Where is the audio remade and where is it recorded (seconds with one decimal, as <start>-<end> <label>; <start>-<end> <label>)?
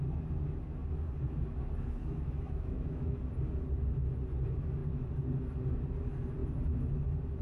0.0-2.0 recorded; 2.0-3.2 remade; 3.2-7.4 recorded